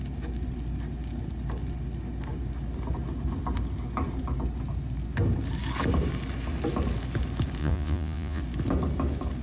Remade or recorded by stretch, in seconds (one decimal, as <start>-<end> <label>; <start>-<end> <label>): 0.0-7.6 recorded; 7.6-8.4 remade; 8.4-9.4 recorded